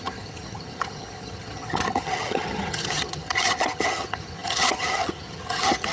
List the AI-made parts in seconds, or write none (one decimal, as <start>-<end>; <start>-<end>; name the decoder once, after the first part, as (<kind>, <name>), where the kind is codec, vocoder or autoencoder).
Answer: 0.0-5.9 (vocoder, HiFi-GAN)